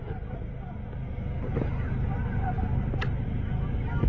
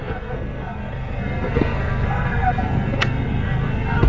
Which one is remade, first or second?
second